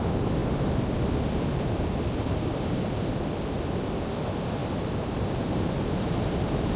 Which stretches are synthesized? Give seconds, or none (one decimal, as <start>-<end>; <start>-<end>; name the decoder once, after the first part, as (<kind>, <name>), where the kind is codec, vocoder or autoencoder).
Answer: 4.6-6.3 (vocoder, BigVGAN v2)